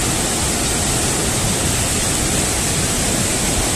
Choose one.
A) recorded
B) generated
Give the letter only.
A